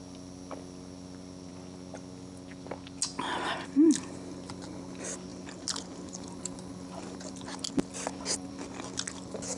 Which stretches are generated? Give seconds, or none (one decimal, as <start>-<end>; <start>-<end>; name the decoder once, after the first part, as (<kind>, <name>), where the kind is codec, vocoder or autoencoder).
none